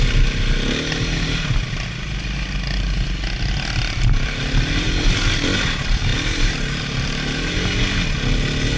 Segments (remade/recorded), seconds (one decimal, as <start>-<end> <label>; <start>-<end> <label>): 0.0-8.8 recorded